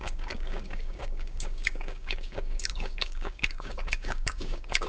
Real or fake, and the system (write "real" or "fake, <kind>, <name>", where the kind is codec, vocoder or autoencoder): fake, codec, DAC